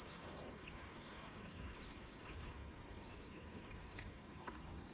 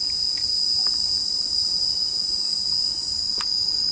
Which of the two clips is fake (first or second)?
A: first